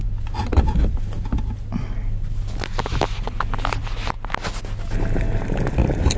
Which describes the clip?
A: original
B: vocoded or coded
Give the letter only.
A